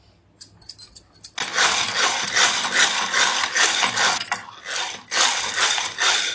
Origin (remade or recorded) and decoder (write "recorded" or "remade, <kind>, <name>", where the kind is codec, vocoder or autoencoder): recorded